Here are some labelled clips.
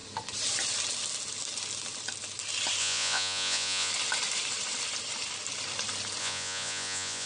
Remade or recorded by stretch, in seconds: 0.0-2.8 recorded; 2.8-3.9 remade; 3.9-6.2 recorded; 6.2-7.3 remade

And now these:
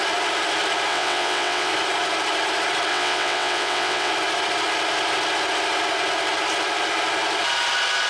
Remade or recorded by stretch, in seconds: 0.0-0.9 recorded; 0.9-1.7 remade; 1.7-2.9 recorded; 2.9-4.1 remade; 4.1-8.1 recorded

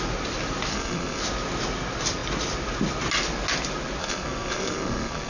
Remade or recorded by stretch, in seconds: 0.0-0.7 recorded; 0.7-1.2 remade; 1.2-4.0 recorded; 4.0-5.3 remade

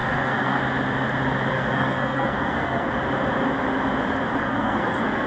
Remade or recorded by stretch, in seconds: 0.0-0.6 remade; 0.6-1.5 recorded; 1.5-2.9 remade; 2.9-4.4 recorded; 4.4-5.3 remade